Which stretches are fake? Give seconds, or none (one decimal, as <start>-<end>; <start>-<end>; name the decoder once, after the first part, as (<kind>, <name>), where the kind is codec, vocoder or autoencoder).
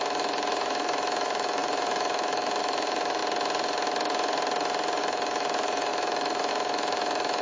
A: 0.0-3.2 (autoencoder, DAC-VAE); 5.0-7.4